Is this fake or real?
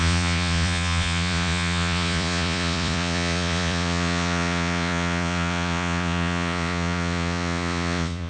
fake